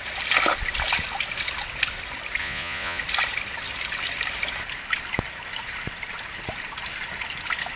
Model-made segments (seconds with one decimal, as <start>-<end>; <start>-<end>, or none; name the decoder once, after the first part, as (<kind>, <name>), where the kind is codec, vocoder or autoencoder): 2.4-3.0 (vocoder, Vocos)